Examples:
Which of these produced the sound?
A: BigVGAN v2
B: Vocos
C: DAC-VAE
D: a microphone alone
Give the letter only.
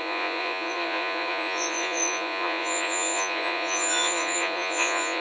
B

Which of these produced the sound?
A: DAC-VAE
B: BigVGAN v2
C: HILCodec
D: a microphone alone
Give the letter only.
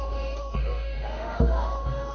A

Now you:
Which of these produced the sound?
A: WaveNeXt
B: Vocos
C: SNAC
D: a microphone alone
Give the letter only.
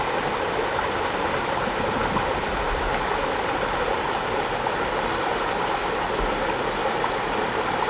D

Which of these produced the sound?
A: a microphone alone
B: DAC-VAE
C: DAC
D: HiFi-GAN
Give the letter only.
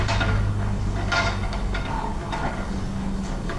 C